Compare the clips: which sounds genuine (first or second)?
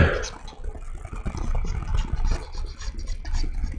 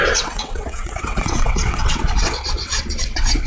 first